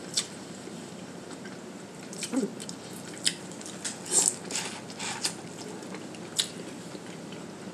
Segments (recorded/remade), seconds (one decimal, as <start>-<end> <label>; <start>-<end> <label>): 0.0-2.5 remade; 2.5-6.5 recorded; 6.5-7.7 remade